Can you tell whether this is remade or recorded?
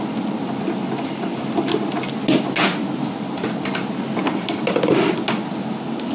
recorded